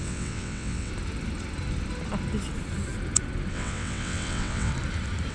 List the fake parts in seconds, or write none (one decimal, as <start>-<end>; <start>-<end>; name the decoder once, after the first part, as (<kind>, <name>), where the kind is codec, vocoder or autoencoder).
0.0-0.9 (vocoder, WaveNeXt); 3.5-4.7